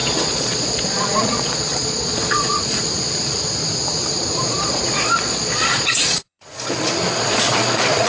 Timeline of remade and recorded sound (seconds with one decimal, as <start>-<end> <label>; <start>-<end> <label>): 0.0-2.8 remade; 2.8-4.3 recorded; 4.3-8.1 remade